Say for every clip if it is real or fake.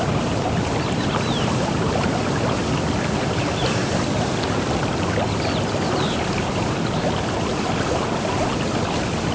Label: real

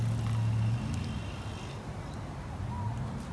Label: real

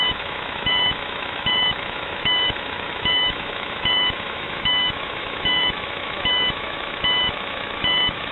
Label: fake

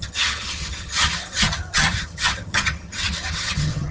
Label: fake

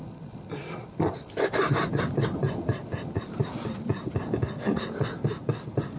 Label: real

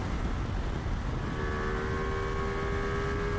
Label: real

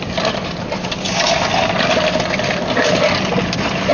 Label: real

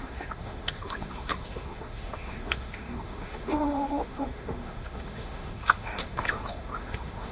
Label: fake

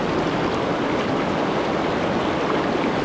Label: real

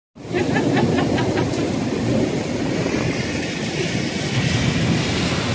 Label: real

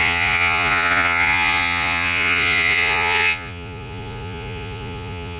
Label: fake